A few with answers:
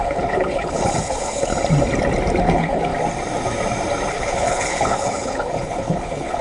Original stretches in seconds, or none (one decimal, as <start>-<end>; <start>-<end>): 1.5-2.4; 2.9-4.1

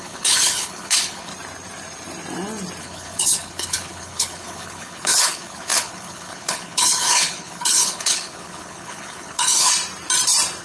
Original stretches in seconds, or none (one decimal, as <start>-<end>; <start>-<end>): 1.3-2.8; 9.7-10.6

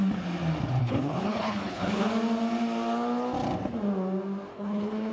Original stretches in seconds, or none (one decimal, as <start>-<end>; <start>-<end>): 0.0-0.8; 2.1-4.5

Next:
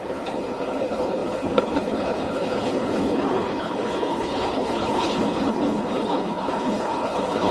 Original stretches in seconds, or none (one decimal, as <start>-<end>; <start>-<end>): none